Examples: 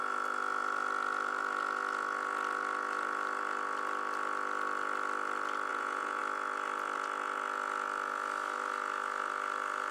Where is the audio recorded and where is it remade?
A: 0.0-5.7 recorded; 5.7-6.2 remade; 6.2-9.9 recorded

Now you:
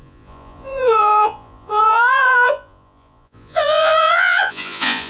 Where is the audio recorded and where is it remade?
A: 0.0-5.1 remade

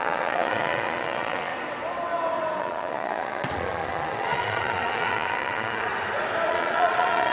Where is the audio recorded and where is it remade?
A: 0.0-1.5 remade; 1.5-2.6 recorded; 2.6-5.9 remade; 5.9-6.5 recorded; 6.5-7.3 remade